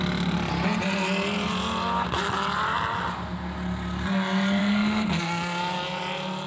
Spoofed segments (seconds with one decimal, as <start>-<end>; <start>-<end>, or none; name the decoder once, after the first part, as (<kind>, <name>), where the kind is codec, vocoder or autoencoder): 4.6-5.2 (codec, SNAC)